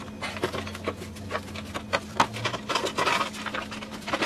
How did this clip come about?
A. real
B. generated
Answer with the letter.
A